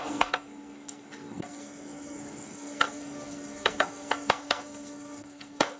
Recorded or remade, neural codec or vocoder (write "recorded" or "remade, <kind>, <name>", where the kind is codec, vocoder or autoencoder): remade, codec, SNAC